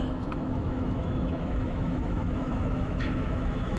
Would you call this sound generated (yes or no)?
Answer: yes